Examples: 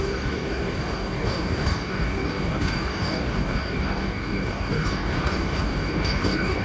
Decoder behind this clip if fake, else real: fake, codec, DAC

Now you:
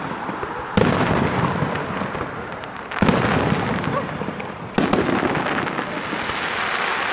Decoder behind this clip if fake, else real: real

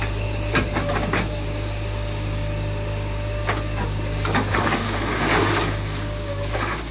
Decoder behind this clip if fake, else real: fake, codec, DAC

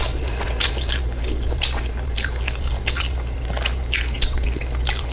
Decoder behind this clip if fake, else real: real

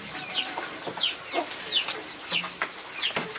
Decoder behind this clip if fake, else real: real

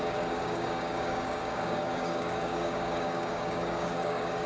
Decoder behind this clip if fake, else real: fake, codec, DAC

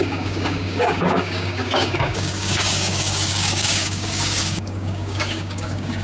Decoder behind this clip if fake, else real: fake, codec, DAC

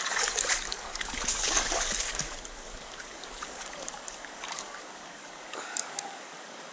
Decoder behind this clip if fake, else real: fake, codec, DAC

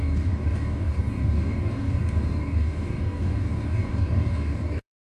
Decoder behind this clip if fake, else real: fake, codec, DAC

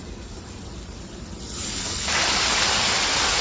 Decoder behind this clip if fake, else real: real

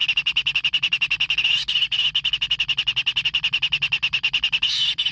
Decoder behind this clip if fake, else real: real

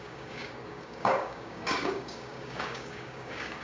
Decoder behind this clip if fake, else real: fake, codec, DAC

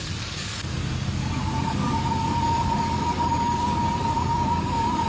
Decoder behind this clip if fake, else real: fake, codec, DAC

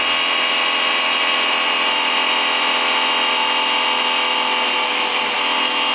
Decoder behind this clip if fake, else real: real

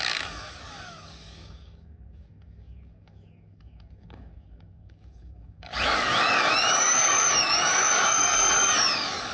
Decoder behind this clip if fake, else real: fake, codec, DAC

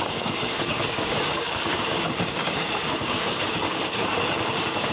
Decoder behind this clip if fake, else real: fake, codec, DAC